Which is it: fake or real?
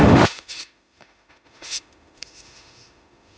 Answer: fake